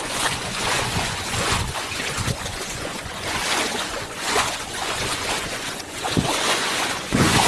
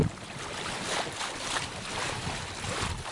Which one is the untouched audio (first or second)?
second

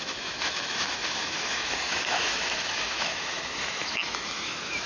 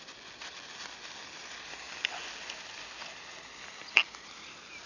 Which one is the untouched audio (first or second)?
second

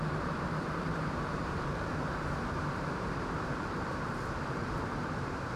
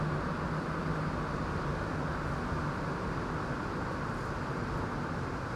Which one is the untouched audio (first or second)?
second